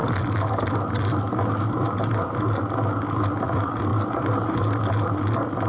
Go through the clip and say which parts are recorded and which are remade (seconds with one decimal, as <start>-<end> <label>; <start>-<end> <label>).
0.0-5.7 recorded